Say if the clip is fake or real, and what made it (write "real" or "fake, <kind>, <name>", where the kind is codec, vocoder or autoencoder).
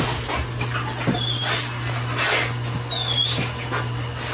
real